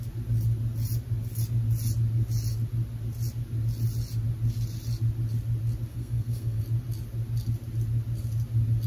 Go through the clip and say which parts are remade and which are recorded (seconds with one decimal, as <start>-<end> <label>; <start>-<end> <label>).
0.0-5.9 recorded; 5.9-6.6 remade; 6.6-8.9 recorded